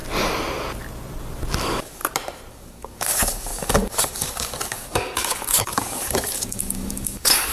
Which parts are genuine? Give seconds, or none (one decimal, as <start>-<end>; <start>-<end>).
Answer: 0.0-1.6; 2.0-2.5